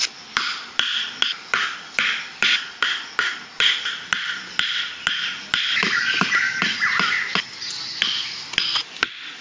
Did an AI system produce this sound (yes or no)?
no